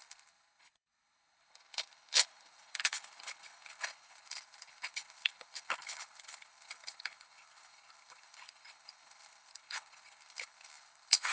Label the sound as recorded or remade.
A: remade